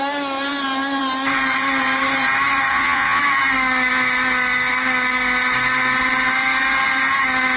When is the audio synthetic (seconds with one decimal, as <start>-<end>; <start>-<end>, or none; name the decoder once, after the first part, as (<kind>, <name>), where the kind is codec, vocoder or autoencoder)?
2.7-3.2 (vocoder, Vocos)

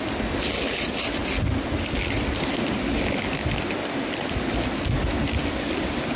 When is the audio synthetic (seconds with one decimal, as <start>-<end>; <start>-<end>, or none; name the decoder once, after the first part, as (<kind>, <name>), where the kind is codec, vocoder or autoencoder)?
none

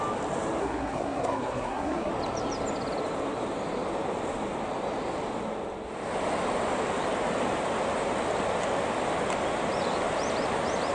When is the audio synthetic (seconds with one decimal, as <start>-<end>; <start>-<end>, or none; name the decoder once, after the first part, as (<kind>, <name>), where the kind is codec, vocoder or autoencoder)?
0.6-2.1 (codec, SNAC)

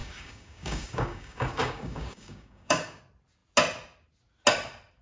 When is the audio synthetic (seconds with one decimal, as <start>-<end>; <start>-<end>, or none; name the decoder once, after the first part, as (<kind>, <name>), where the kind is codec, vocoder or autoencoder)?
0.0-3.0 (codec, DAC)

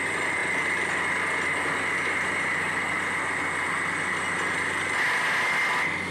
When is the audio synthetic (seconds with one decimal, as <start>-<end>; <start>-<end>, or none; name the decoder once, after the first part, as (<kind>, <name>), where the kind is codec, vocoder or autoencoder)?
none

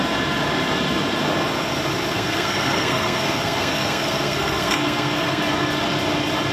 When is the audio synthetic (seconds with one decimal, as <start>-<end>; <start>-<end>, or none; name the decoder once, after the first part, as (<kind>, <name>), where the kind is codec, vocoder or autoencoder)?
2.1-5.4 (codec, SNAC)